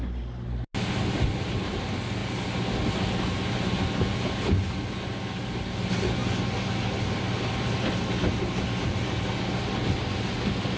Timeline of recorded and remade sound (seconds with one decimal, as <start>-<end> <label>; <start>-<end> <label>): 0.0-10.8 recorded